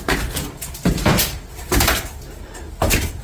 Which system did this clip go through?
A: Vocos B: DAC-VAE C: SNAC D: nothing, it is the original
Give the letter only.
D